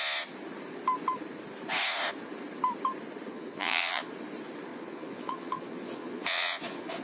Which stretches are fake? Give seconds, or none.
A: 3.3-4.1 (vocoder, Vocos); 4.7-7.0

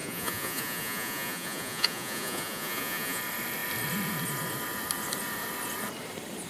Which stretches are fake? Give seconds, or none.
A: 0.0-3.2 (vocoder, Vocos)

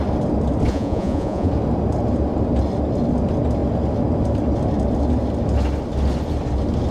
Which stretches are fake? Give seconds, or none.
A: 0.7-1.5 (vocoder, Vocos)

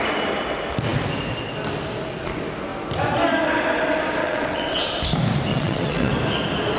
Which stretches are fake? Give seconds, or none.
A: 4.2-4.9 (vocoder, WaveNeXt); 5.5-6.1

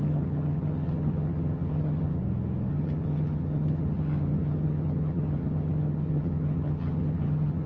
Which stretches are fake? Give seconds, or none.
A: 0.0-2.2 (vocoder, HiFi-GAN); 2.7-7.7

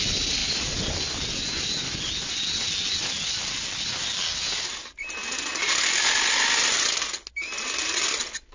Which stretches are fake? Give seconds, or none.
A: none

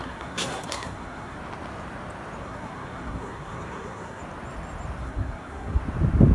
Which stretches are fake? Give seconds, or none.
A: 0.0-1.4 (codec, SNAC); 2.4-4.2; 5.0-5.8

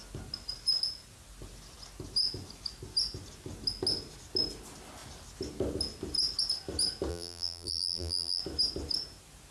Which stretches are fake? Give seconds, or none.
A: 7.1-8.4 (vocoder, BigVGAN v2)